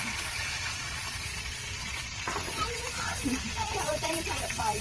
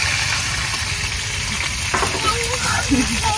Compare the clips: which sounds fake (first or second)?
first